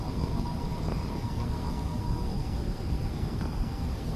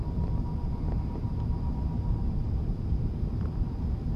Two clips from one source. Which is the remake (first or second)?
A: first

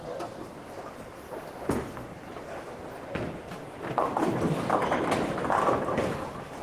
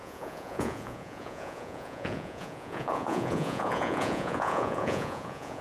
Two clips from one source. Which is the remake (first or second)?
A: second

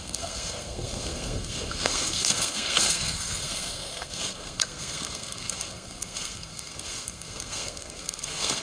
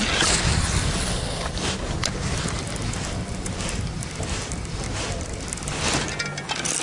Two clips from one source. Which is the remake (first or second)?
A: first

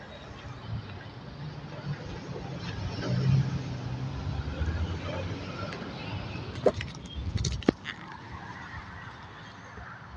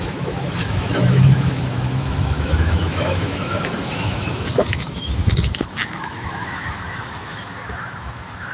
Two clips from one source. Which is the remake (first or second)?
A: second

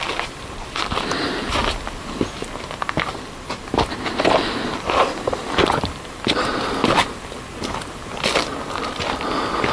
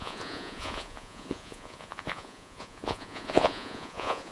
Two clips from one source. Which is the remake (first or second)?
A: second